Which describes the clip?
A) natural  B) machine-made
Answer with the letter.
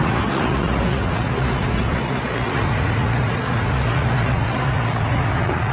B